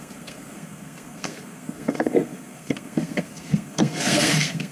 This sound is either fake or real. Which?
fake